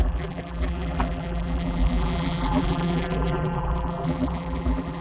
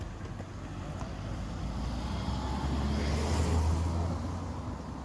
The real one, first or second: second